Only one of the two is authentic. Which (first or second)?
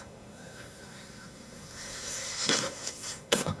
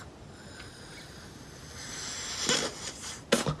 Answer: second